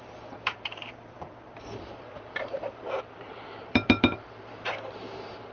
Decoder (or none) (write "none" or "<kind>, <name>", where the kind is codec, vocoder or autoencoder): vocoder, BigVGAN v2